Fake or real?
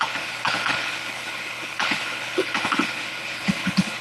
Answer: fake